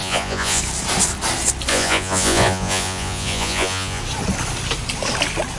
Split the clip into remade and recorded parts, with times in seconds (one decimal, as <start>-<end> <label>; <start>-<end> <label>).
0.0-0.6 remade; 0.6-1.7 recorded; 1.7-4.0 remade; 4.0-5.6 recorded